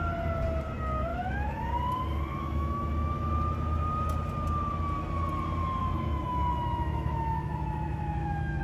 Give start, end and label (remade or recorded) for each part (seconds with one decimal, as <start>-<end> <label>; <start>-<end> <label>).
0.0-1.1 recorded; 1.1-1.7 remade; 1.7-2.3 recorded; 2.3-3.3 remade; 3.3-5.8 recorded; 5.8-8.6 remade